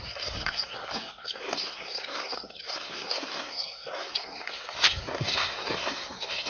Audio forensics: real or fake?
fake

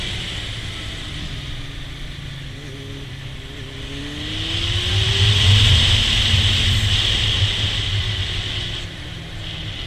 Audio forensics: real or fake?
real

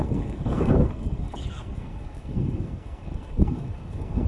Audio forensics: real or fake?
fake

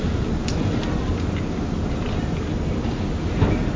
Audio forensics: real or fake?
real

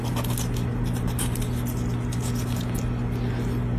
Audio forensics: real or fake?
real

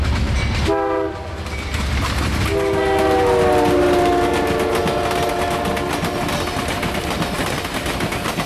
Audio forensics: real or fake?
real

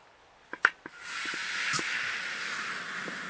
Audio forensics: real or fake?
real